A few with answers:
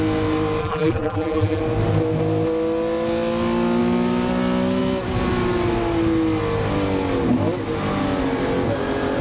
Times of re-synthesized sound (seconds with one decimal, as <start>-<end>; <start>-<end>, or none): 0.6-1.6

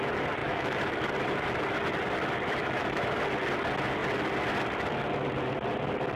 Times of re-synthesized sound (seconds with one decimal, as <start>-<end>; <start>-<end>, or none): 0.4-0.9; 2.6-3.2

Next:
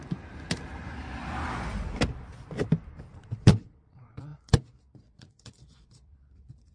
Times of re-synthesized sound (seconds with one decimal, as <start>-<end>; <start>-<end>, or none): 3.1-6.7

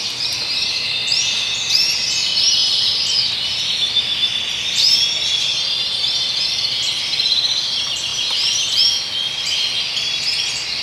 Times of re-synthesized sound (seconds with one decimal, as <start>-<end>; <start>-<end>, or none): 2.6-3.3; 5.5-6.6

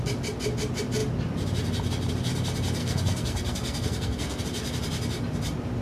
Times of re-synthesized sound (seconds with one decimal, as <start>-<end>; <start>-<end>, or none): 2.8-4.4

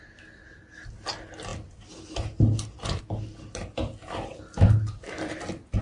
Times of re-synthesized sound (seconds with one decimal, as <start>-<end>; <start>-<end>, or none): none

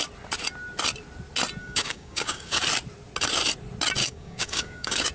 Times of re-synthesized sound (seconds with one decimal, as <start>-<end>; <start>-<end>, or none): 1.6-2.6; 4.0-5.1

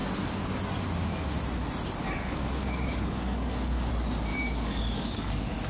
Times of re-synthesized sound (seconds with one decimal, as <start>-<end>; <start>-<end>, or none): 2.0-3.9; 4.3-5.3